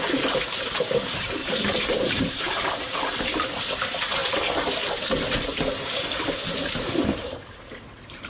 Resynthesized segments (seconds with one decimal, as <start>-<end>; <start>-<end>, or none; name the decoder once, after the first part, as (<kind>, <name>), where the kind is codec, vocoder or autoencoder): 0.0-1.4 (vocoder, BigVGAN v2); 1.9-4.2; 7.2-8.3